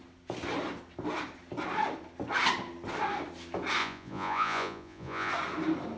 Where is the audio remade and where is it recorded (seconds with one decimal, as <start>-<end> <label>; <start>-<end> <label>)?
0.0-3.8 recorded; 3.8-5.3 remade; 5.3-6.0 recorded

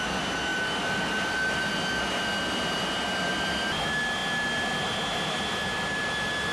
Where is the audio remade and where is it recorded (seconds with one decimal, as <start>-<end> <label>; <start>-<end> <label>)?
0.0-6.5 recorded

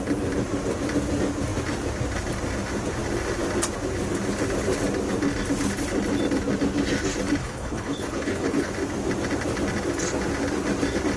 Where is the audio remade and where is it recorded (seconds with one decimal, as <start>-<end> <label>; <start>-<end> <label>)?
0.0-7.4 recorded; 7.4-8.7 remade; 8.7-11.2 recorded

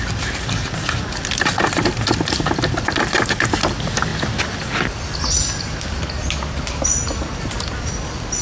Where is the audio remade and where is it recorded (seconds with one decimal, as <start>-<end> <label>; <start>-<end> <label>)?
0.0-8.4 recorded

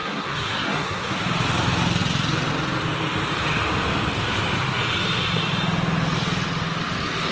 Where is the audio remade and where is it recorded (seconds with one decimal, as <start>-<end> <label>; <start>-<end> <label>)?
0.0-1.1 remade; 1.1-7.3 recorded

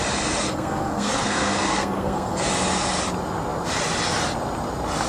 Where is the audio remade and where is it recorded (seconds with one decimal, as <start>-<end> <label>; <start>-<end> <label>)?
0.0-0.4 recorded; 0.4-2.5 remade; 2.5-5.1 recorded

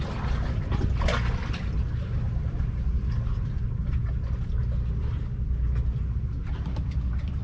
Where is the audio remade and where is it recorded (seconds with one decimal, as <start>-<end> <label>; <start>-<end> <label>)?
0.0-7.4 recorded

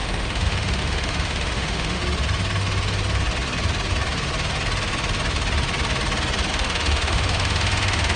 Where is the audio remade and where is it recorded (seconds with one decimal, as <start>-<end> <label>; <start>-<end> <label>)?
0.0-2.0 remade; 2.0-6.5 recorded; 6.5-8.2 remade